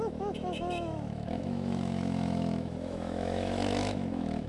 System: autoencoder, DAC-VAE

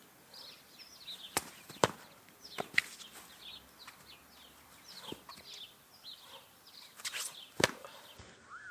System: none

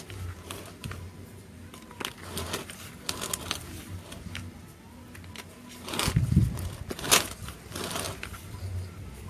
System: none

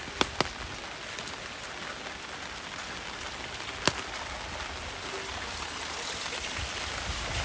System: none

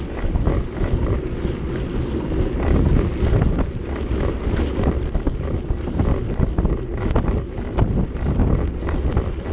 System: none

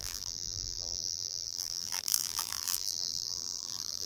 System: vocoder, BigVGAN v2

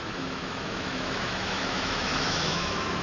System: autoencoder, DAC-VAE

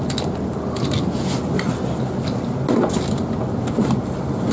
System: none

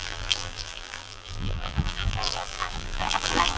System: vocoder, BigVGAN v2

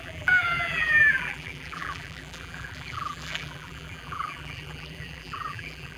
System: vocoder, BigVGAN v2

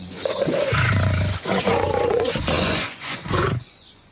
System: vocoder, Vocos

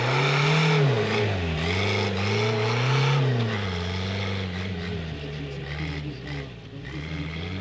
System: none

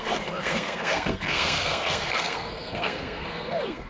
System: codec, SNAC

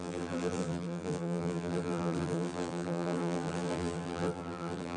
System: vocoder, BigVGAN v2